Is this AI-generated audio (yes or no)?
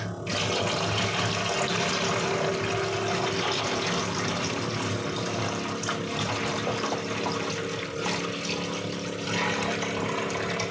no